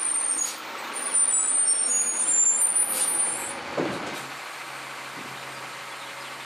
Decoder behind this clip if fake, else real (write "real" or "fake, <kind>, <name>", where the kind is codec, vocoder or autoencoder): real